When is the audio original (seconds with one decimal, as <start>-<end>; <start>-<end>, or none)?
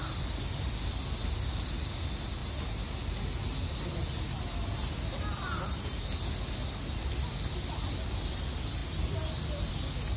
0.0-10.2